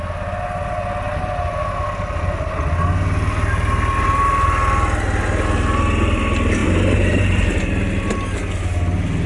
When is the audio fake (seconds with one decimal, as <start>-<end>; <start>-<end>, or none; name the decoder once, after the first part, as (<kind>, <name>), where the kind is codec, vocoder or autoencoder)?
6.6-7.6 (vocoder, BigVGAN v2)